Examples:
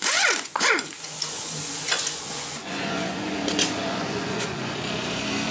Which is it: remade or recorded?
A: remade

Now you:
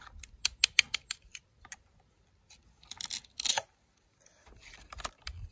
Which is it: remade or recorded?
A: recorded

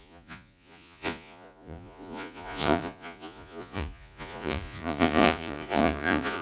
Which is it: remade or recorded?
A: remade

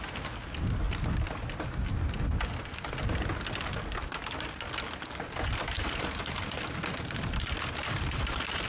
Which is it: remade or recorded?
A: recorded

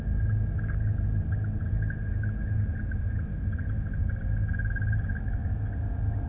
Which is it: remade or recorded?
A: recorded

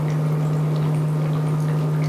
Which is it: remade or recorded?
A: recorded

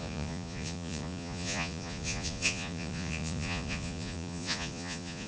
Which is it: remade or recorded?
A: remade